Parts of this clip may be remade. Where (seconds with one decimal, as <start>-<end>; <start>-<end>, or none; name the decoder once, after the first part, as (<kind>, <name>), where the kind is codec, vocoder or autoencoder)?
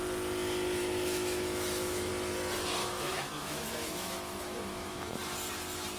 0.8-2.1 (autoencoder, DAC-VAE); 2.8-5.2